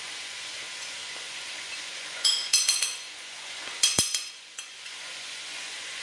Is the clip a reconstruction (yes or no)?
yes